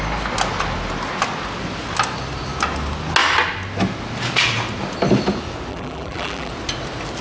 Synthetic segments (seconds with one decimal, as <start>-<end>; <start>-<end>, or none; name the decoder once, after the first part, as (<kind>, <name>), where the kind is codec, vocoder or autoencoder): 5.7-6.5 (vocoder, BigVGAN v2)